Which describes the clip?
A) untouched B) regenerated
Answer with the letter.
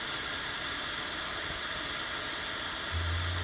A